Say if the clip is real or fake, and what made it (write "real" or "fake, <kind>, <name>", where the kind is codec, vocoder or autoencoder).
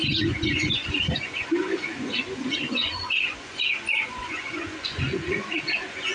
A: fake, vocoder, Vocos